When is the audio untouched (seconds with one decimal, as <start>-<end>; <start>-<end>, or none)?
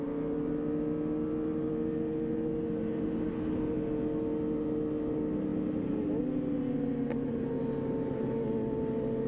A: 0.0-9.3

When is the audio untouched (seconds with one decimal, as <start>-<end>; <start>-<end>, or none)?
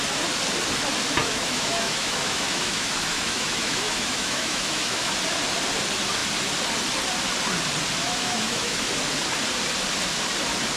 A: 0.0-1.2; 5.1-8.0; 8.9-10.8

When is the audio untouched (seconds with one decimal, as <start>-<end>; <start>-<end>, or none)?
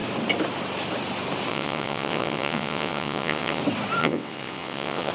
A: 0.0-1.5; 3.6-4.0